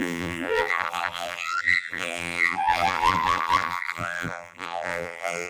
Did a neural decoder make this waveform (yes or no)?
yes